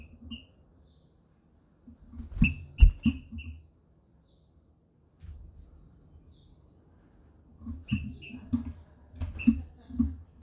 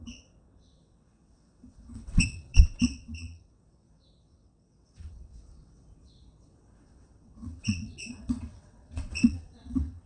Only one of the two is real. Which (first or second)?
first